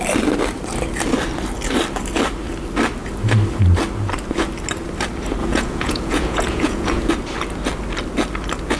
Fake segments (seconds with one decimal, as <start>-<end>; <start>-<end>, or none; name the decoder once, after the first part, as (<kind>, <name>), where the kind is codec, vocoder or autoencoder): 5.4-7.1 (vocoder, Vocos)